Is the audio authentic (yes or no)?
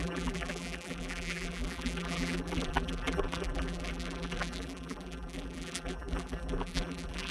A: no